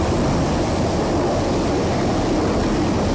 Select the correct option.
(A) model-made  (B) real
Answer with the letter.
B